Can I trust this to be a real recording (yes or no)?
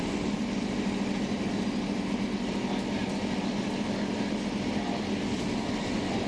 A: yes